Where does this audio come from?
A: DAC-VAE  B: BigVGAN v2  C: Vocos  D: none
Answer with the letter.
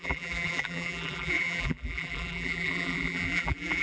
B